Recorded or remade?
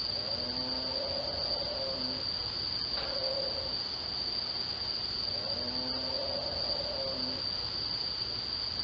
recorded